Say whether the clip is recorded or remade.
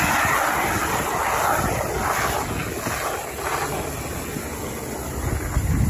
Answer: recorded